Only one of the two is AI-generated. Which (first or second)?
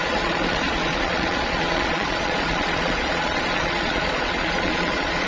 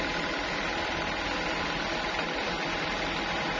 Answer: first